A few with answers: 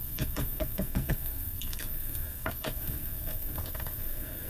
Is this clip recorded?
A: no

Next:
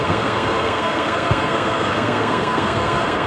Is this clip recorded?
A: no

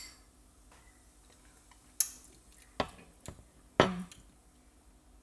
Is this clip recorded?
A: yes